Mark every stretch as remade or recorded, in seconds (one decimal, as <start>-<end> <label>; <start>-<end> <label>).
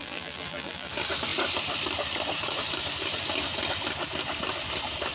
0.0-0.9 remade; 0.9-5.1 recorded